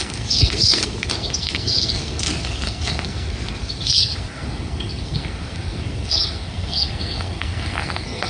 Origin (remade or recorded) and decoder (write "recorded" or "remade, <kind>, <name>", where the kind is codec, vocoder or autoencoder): remade, codec, SNAC